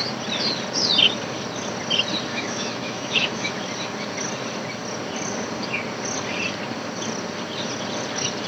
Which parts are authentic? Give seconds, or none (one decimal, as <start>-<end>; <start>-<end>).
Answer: 0.0-2.3; 3.5-8.5